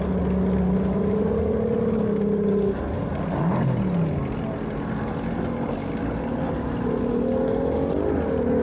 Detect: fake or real real